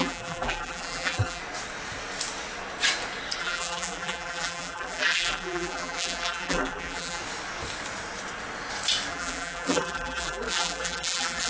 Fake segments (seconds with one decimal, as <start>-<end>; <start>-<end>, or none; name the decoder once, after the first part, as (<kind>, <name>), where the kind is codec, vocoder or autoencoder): 0.0-1.4 (vocoder, BigVGAN v2); 3.4-7.2; 9.1-11.5